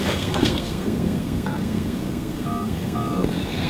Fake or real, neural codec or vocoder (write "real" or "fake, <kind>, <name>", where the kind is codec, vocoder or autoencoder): fake, codec, SNAC